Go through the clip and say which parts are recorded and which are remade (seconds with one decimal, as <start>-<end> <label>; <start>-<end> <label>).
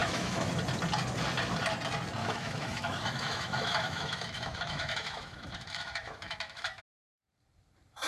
0.0-0.5 remade; 0.5-2.2 recorded; 2.2-6.8 remade; 6.8-8.1 recorded